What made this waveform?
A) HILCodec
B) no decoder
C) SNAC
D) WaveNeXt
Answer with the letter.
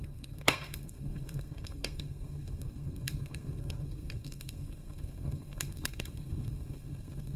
C